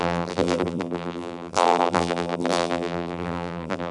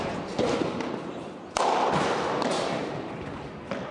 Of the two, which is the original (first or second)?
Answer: second